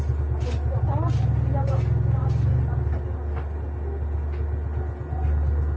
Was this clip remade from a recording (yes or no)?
no